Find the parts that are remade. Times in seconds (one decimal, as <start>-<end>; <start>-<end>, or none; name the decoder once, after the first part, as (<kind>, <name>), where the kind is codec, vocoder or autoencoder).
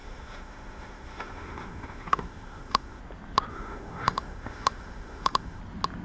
0.0-3.0 (autoencoder, DAC-VAE); 3.5-5.6